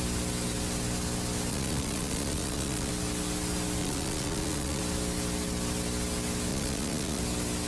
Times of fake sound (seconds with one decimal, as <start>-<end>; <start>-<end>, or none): 1.5-2.9; 3.8-4.8; 6.5-7.2